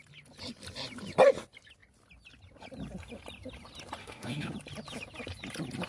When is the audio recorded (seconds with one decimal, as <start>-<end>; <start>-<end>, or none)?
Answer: 0.0-4.0; 4.5-5.9